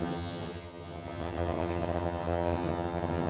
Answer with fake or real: fake